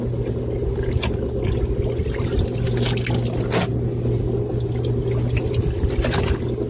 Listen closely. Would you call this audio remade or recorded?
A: recorded